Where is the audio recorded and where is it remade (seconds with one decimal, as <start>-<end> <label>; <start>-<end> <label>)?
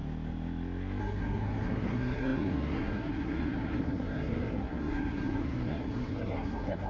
0.0-1.0 recorded; 1.0-6.9 remade